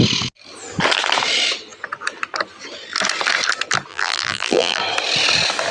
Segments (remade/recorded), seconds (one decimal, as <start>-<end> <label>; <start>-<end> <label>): 0.0-3.9 recorded; 3.9-4.8 remade; 4.8-5.7 recorded